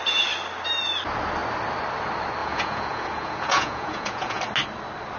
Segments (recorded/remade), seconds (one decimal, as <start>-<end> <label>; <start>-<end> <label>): 0.0-2.4 recorded; 2.4-4.4 remade; 4.4-5.2 recorded